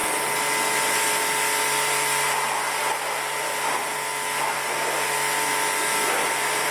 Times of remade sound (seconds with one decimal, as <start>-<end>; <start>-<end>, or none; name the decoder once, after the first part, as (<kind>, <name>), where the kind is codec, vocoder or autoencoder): 2.8-4.1 (vocoder, BigVGAN v2); 6.3-6.7